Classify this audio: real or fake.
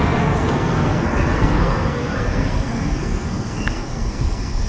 fake